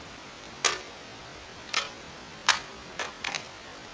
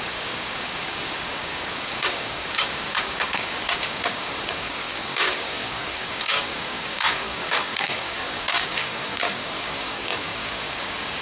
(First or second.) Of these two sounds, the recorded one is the first